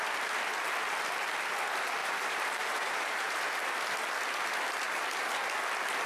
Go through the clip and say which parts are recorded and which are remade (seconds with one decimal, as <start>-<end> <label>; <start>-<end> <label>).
0.0-2.0 recorded; 2.0-3.4 remade; 3.4-6.1 recorded